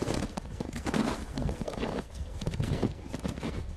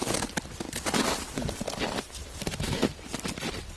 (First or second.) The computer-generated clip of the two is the first